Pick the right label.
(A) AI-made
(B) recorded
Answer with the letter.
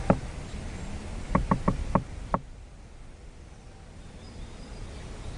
B